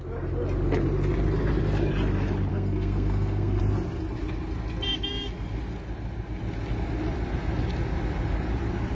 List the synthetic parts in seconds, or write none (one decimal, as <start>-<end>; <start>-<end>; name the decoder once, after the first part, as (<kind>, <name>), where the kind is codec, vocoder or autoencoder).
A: 2.5-3.6 (codec, SNAC)